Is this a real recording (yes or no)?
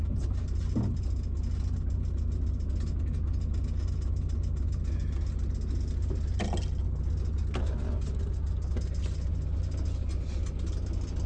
yes